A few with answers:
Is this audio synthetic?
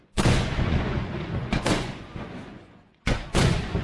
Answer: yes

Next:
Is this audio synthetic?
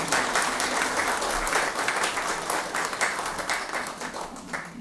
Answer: no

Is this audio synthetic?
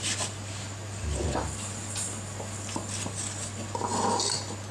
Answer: no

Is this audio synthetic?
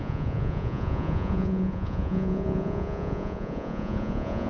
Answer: yes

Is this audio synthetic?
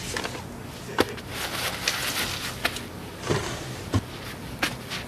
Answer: no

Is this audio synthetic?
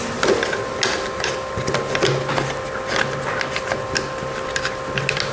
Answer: no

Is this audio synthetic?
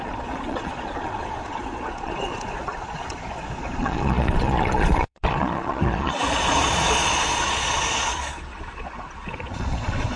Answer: yes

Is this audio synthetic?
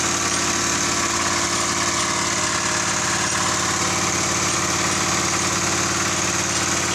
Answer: no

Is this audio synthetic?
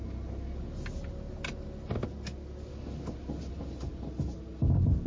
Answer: no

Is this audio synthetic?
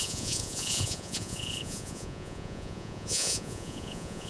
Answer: yes